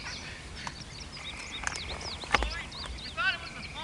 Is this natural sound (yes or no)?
yes